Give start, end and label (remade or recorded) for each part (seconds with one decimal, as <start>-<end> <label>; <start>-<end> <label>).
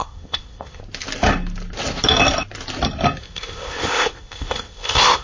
0.0-0.8 remade; 0.8-3.2 recorded; 3.2-5.2 remade